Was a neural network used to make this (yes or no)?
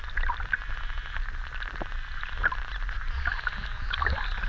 no